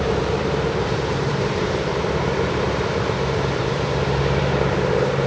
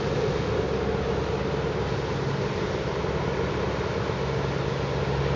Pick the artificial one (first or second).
first